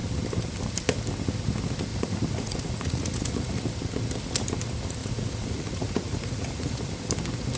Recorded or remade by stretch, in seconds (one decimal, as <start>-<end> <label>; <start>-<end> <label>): 0.0-1.9 recorded; 1.9-3.6 remade; 3.6-5.0 recorded; 5.0-6.9 remade; 6.9-7.6 recorded